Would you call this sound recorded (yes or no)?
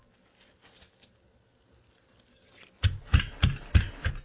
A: yes